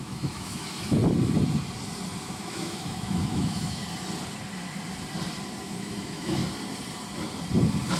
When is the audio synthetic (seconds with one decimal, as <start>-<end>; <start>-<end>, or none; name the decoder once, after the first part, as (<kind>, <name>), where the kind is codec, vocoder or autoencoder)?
0.0-1.0 (autoencoder, DAC-VAE); 2.2-3.8; 5.6-6.4